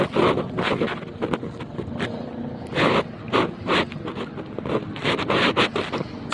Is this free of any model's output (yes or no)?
yes